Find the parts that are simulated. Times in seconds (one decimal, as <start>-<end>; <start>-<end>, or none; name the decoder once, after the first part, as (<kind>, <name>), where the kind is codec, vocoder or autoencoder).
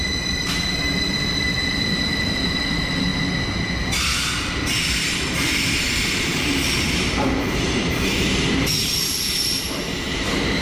0.0-3.1 (vocoder, BigVGAN v2); 6.0-10.6